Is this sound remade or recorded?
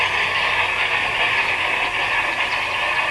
recorded